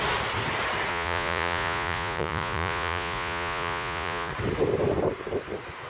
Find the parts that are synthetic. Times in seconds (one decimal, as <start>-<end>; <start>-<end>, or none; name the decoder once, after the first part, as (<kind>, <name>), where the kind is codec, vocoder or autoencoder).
0.9-4.3 (vocoder, Vocos)